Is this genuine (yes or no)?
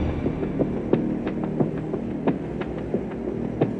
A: yes